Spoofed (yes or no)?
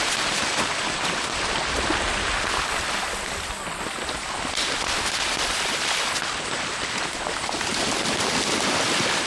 no